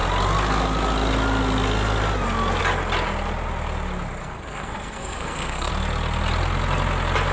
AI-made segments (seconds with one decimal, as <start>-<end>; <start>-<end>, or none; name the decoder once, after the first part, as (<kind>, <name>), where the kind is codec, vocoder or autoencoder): 4.2-5.7 (codec, SNAC)